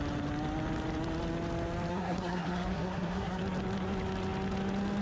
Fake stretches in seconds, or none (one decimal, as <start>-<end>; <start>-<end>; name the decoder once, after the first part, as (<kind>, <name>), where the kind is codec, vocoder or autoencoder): 1.9-3.4 (codec, SNAC)